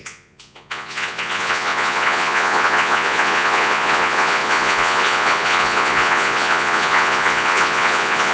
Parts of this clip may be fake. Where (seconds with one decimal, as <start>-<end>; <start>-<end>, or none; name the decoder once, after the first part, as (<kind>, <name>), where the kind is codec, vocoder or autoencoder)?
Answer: 0.0-8.3 (vocoder, Vocos)